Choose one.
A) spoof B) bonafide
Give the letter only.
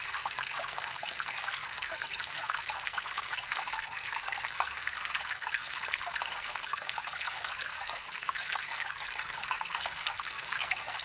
A